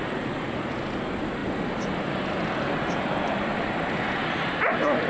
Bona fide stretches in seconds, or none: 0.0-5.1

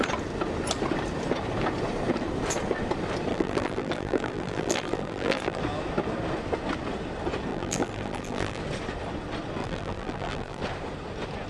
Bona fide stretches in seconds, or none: 0.0-3.3; 5.6-7.5; 8.6-9.6; 10.6-11.5

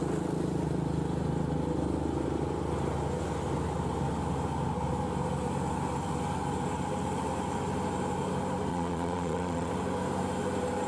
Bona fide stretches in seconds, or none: 0.0-8.7; 9.7-10.9